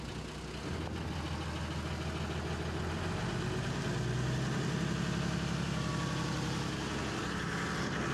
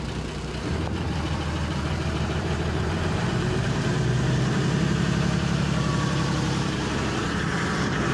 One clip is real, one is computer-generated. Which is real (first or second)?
first